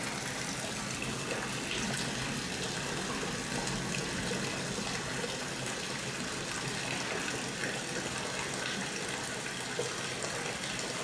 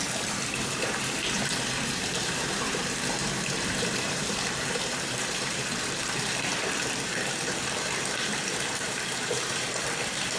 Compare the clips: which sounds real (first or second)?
first